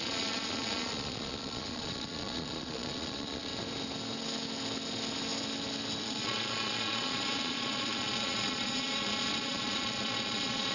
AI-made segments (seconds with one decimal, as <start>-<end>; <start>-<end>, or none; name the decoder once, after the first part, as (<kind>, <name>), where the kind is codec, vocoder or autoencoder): 0.0-3.5 (vocoder, Vocos); 6.0-10.7